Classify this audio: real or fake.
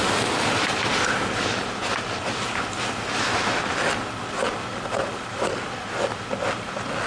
real